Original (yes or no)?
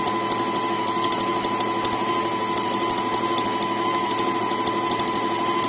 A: yes